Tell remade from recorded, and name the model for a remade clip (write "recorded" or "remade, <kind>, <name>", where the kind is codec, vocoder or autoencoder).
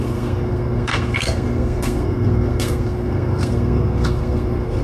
remade, codec, SNAC